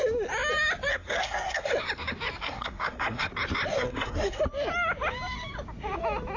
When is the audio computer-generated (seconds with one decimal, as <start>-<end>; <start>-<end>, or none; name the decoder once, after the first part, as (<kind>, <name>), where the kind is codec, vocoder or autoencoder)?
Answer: 0.9-1.7 (codec, SNAC); 2.4-3.3; 3.7-4.4